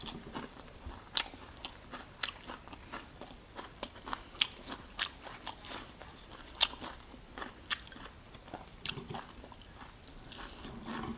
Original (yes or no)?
yes